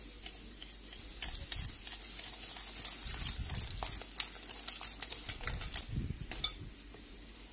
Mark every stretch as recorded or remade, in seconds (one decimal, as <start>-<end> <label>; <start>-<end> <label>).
0.0-7.5 recorded